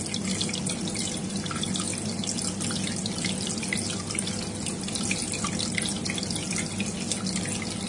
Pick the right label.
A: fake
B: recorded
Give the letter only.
B